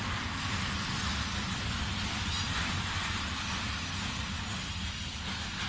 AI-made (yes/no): no